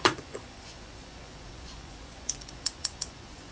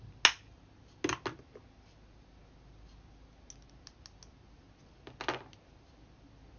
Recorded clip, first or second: second